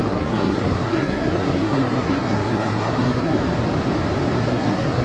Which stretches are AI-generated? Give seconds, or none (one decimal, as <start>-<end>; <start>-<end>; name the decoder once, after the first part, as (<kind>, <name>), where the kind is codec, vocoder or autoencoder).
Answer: 0.0-3.4 (codec, SNAC); 4.4-5.0